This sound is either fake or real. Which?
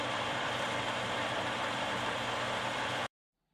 fake